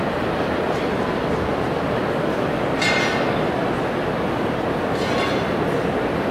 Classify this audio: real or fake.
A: real